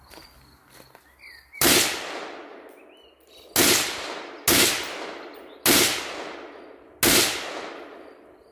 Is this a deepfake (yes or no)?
no